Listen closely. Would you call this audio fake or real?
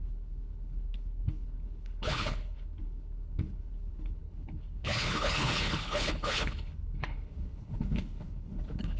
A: fake